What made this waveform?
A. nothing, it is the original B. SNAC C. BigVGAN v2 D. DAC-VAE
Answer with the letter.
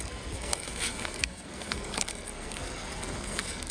B